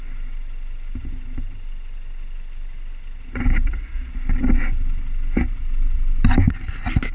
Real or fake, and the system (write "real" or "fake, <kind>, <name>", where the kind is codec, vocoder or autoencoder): real